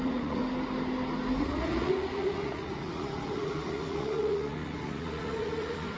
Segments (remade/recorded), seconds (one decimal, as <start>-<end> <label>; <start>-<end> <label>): 0.0-0.4 remade; 0.4-1.4 recorded; 1.4-6.0 remade